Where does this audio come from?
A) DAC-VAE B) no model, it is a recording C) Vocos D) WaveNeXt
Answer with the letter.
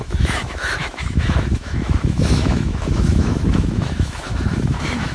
A